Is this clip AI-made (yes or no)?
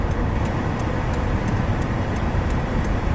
no